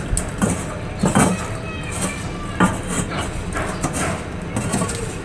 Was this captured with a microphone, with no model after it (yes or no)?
yes